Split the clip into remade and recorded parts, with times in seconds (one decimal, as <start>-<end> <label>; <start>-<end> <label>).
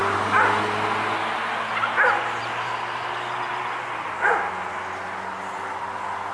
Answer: 0.0-6.3 recorded